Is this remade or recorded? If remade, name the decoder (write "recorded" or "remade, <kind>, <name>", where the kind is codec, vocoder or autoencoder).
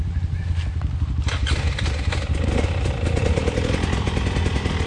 recorded